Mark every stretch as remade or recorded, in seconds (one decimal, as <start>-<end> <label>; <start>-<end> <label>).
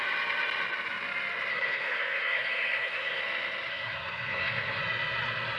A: 0.0-1.5 recorded; 1.5-3.2 remade; 3.2-3.7 recorded; 3.7-4.8 remade; 4.8-5.6 recorded